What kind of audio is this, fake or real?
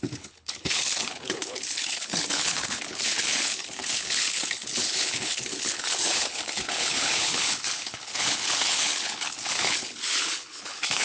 fake